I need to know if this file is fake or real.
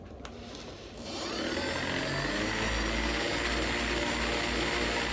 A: real